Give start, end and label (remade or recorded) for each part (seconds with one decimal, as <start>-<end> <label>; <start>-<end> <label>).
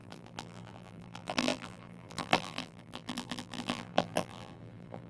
0.0-5.1 remade